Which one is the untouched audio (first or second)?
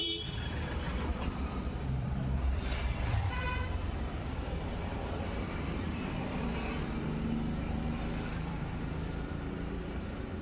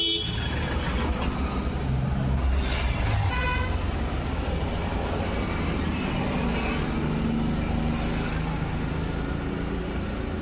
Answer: second